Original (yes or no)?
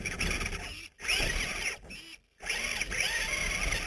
yes